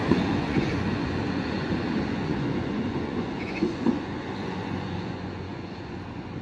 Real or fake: fake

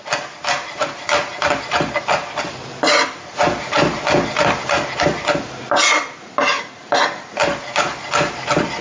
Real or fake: real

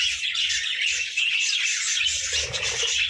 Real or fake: real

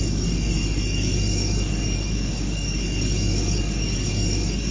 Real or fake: fake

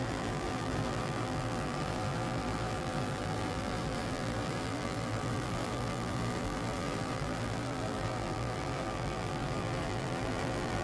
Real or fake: fake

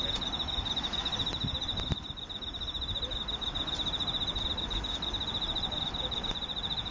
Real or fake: real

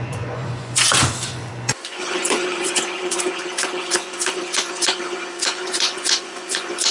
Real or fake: fake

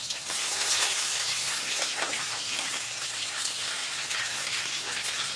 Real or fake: fake